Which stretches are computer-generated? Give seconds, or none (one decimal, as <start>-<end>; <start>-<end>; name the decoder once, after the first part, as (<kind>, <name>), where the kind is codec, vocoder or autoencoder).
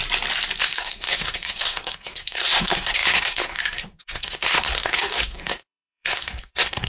0.6-6.9 (codec, SNAC)